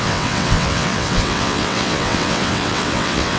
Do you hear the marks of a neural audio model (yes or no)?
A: yes